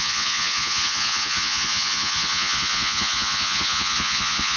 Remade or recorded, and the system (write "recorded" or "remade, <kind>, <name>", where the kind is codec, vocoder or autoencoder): remade, vocoder, Vocos